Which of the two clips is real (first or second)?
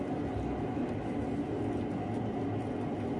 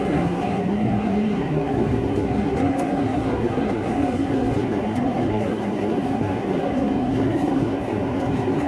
first